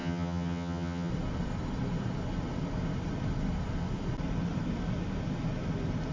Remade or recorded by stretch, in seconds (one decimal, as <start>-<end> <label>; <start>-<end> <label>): 0.0-1.1 remade; 1.1-6.1 recorded